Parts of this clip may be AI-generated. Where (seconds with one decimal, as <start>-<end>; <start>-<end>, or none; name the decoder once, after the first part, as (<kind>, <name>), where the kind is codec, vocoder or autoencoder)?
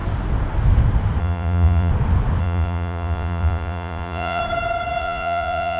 1.2-1.9 (vocoder, Vocos); 2.4-4.4; 5.0-5.8